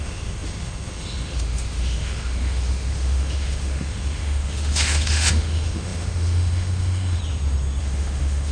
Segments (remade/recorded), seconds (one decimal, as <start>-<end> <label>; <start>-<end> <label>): 0.0-7.2 remade; 7.2-7.8 recorded; 7.8-8.5 remade